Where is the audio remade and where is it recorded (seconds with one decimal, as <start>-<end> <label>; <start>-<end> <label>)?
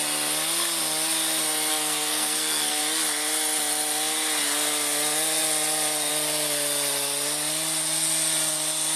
0.0-1.7 recorded; 1.7-2.8 remade; 2.8-9.0 recorded